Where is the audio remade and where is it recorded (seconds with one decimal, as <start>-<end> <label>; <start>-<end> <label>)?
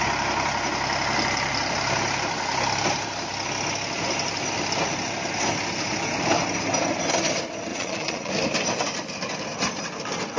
0.0-7.7 recorded; 7.7-8.3 remade; 8.3-10.4 recorded